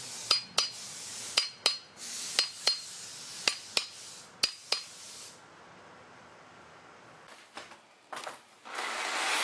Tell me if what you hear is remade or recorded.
recorded